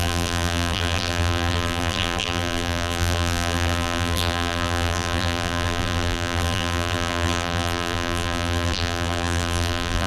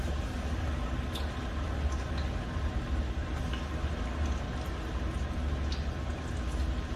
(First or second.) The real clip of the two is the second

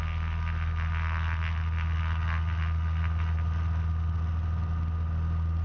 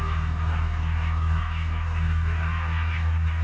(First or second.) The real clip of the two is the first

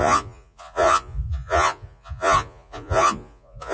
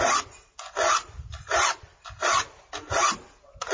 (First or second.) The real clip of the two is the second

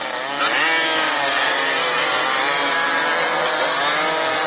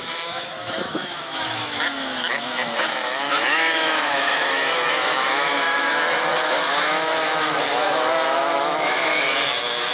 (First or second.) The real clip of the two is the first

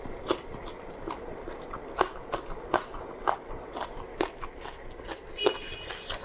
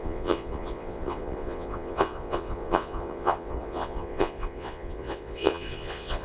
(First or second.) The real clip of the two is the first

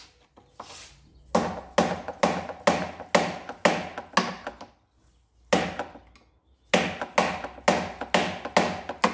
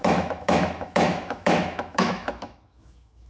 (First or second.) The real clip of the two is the first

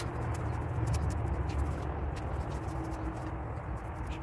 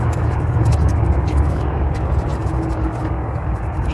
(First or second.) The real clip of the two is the first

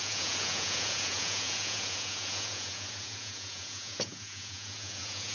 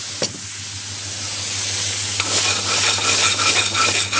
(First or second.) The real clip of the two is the second